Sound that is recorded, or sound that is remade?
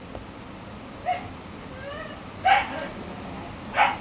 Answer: recorded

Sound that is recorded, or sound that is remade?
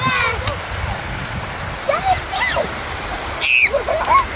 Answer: recorded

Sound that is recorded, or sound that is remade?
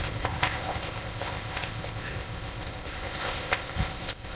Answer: remade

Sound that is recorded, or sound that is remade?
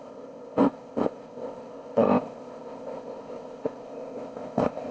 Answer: remade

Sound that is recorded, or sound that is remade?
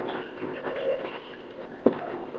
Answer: remade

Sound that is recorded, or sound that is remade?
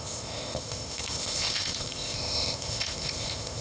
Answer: remade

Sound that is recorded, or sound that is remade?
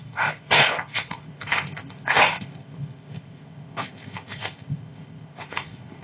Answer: remade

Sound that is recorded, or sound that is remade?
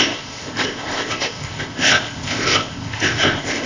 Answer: remade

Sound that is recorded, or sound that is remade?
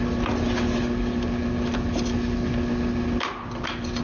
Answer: recorded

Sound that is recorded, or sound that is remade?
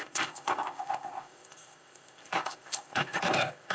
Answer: remade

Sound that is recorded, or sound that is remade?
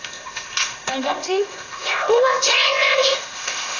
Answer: remade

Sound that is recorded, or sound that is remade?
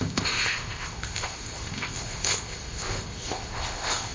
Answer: remade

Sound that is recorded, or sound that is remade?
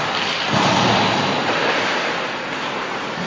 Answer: recorded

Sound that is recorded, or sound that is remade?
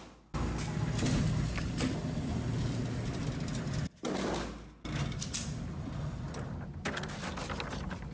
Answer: recorded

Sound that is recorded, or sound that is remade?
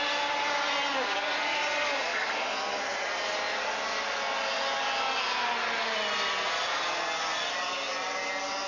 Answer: recorded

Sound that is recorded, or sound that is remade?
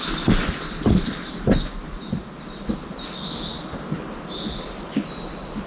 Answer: recorded